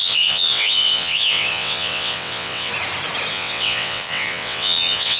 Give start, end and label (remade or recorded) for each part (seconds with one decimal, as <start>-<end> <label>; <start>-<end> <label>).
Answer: 0.0-2.7 remade; 2.7-3.3 recorded; 3.3-5.2 remade